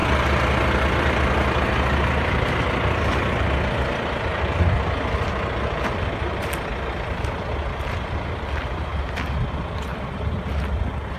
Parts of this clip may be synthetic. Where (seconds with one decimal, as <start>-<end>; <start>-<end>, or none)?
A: 0.0-4.2; 6.7-7.5; 9.9-10.5